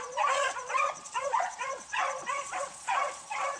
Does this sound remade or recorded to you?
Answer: remade